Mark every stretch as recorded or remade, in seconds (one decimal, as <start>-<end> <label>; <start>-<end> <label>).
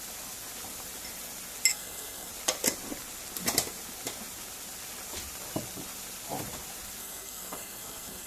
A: 0.0-1.7 recorded; 1.7-2.3 remade; 2.3-7.0 recorded; 7.0-8.3 remade